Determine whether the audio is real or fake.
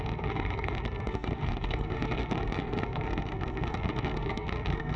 fake